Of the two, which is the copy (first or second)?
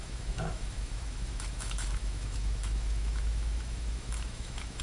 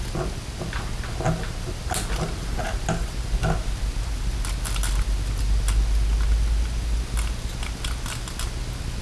first